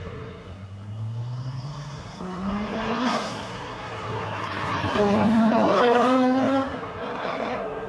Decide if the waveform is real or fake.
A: fake